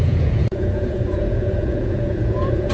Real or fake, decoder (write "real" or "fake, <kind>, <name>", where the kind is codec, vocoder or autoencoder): fake, vocoder, Vocos